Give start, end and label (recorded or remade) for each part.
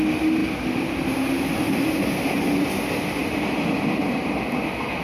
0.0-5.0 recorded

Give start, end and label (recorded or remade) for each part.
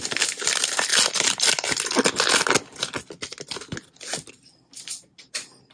0.0-5.7 recorded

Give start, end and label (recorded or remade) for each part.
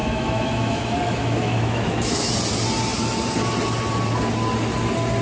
0.0-2.3 remade; 2.3-5.2 recorded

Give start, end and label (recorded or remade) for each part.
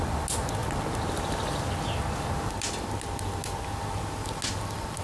0.0-5.0 recorded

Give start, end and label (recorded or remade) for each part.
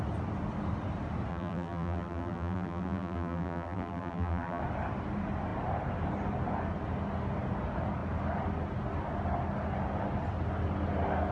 0.0-1.3 recorded; 1.3-4.6 remade; 4.6-11.3 recorded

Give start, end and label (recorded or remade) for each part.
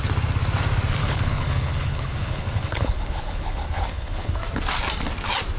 0.0-1.0 recorded; 1.0-4.4 remade; 4.4-5.6 recorded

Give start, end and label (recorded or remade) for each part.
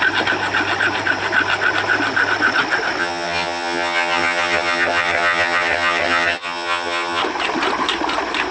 0.0-3.0 recorded; 3.0-7.2 remade; 7.2-8.5 recorded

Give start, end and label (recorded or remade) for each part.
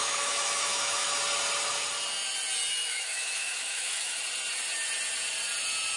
0.0-1.2 remade; 1.2-2.7 recorded; 2.7-4.2 remade; 4.2-6.0 recorded